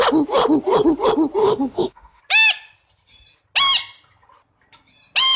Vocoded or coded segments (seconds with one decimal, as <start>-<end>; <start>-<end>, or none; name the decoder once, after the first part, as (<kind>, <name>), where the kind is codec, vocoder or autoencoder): 1.4-2.2 (autoencoder, DAC-VAE)